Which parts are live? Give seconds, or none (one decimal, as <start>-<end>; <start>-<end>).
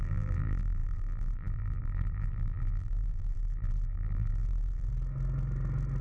4.9-6.0